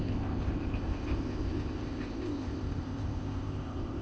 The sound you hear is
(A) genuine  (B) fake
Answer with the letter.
B